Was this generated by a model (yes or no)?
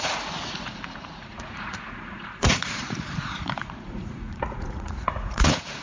yes